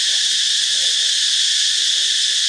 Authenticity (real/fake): real